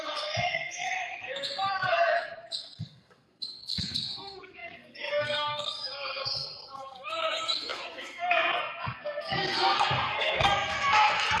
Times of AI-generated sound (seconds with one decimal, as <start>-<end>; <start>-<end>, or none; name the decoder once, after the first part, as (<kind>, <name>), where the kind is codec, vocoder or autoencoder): 0.0-11.4 (codec, SNAC)